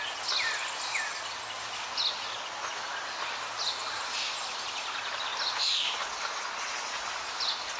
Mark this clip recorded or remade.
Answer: recorded